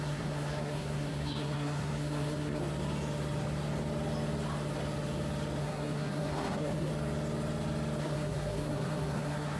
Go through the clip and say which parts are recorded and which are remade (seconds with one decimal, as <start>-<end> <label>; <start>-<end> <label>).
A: 0.0-2.6 remade; 2.6-5.6 recorded; 5.6-6.9 remade; 6.9-8.0 recorded; 8.0-9.6 remade